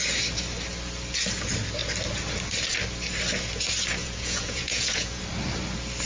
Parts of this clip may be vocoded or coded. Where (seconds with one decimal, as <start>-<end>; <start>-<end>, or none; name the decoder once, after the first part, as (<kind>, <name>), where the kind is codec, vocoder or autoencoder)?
4.0-5.2 (vocoder, Vocos)